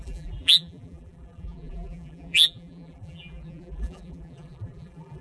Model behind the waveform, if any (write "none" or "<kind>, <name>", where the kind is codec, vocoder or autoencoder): vocoder, BigVGAN v2